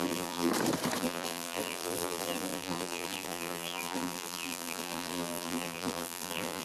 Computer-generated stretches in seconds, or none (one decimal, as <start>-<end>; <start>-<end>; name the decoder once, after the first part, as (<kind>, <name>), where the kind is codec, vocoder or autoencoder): 0.0-0.5 (vocoder, BigVGAN v2); 1.0-6.6